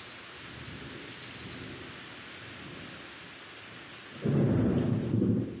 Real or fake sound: real